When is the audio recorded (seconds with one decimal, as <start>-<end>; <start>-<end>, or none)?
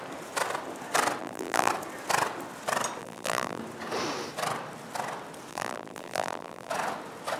0.0-1.2; 1.7-3.0; 3.6-5.5; 6.7-7.4